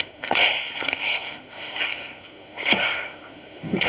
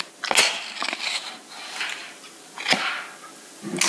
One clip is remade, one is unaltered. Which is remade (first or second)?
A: first